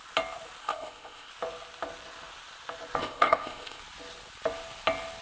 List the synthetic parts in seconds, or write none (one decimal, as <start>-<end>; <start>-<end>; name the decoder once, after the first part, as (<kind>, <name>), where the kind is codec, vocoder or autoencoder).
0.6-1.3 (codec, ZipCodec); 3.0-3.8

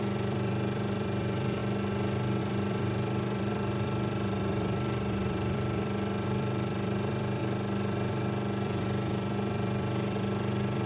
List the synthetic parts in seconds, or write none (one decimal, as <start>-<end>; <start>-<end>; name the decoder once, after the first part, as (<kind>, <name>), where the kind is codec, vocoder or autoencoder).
0.0-1.6 (vocoder, BigVGAN v2); 2.4-7.4; 8.1-10.9

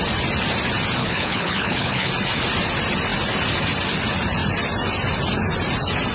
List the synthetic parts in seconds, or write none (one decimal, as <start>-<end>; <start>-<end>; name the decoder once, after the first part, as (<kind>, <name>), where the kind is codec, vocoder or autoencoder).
1.0-2.1 (codec, HILCodec)

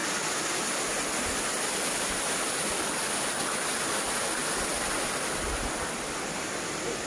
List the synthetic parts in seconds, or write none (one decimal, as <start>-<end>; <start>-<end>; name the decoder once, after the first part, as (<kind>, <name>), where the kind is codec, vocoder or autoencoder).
none